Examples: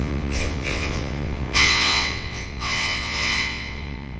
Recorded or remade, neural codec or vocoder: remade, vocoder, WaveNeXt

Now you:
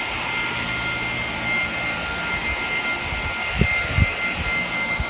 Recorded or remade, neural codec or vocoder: recorded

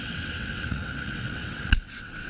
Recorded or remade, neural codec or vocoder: remade, vocoder, WaveNeXt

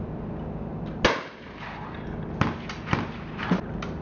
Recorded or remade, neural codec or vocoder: recorded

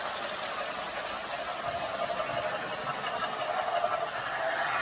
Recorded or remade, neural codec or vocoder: recorded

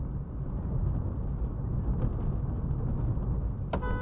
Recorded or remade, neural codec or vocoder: recorded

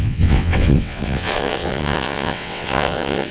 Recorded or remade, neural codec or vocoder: remade, vocoder, WaveNeXt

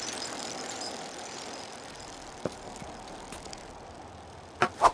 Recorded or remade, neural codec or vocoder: recorded